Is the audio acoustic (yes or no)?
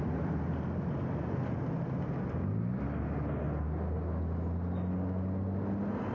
yes